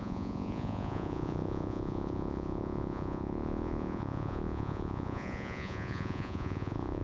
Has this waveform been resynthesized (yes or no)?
yes